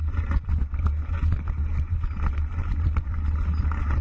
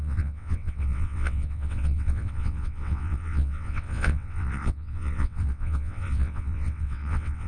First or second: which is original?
first